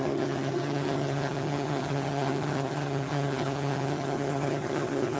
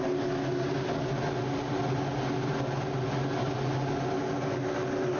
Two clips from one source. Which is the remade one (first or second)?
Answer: first